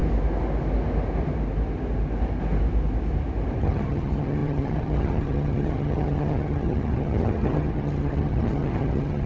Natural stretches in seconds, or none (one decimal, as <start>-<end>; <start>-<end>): 0.0-3.6